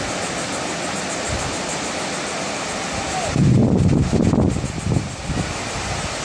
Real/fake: real